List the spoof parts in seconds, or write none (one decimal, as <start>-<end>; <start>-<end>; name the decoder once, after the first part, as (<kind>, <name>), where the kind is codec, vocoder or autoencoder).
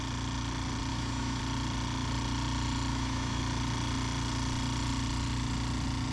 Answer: 0.9-1.4 (autoencoder, DAC-VAE); 2.9-3.4